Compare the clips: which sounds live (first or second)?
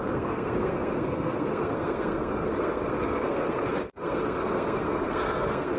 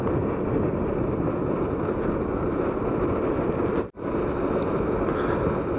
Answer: second